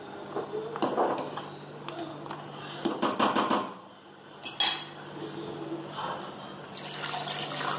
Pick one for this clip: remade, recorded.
recorded